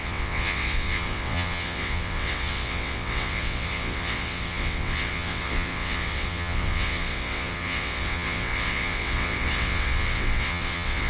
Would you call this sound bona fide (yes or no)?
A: no